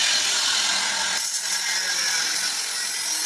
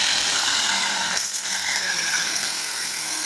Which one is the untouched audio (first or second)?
first